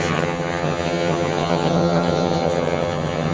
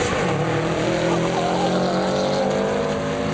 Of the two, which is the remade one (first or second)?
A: first